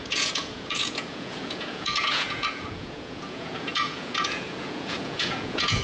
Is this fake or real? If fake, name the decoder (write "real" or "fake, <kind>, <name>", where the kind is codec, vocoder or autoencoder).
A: fake, vocoder, Vocos